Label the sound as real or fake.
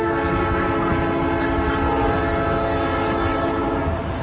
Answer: real